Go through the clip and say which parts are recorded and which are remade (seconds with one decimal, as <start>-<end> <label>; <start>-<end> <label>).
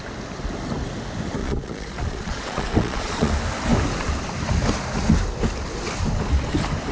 0.0-1.4 recorded; 1.4-3.3 remade; 3.3-6.9 recorded